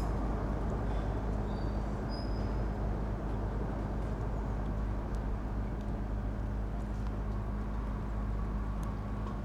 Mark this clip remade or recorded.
recorded